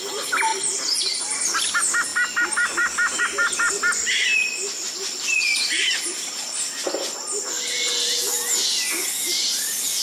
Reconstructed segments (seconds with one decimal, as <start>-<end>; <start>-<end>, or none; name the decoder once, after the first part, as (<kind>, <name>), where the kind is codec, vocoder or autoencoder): 0.5-1.2 (vocoder, BigVGAN v2); 2.1-3.2; 4.3-7.9